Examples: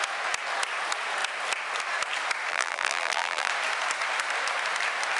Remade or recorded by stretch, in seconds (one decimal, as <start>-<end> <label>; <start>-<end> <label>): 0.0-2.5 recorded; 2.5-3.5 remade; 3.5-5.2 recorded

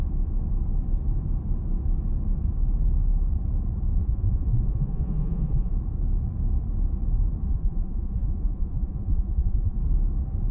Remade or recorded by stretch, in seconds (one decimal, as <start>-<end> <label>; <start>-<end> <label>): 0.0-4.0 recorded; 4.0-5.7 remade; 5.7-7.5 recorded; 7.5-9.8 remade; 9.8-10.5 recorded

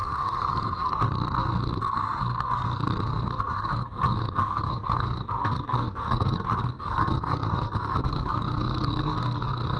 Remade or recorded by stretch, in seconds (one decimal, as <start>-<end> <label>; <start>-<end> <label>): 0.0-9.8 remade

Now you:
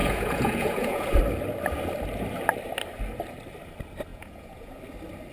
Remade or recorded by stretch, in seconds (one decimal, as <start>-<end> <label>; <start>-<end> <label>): 0.0-1.2 remade; 1.2-4.1 recorded; 4.1-4.8 remade; 4.8-5.3 recorded

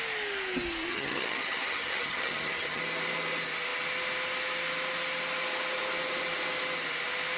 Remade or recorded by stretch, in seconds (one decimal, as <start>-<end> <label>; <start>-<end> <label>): 0.0-0.9 recorded; 0.9-2.8 remade; 2.8-7.4 recorded

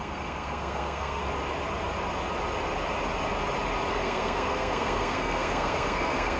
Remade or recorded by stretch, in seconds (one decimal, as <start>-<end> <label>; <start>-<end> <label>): 0.0-1.2 remade; 1.2-3.9 recorded; 3.9-6.4 remade

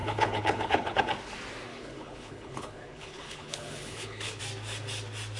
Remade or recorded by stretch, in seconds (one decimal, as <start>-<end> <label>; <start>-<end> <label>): 0.0-1.0 remade; 1.0-1.7 recorded; 1.7-4.4 remade; 4.4-5.4 recorded